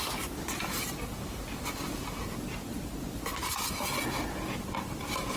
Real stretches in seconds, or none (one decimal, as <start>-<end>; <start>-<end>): 0.0-5.4